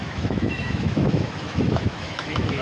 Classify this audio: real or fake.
fake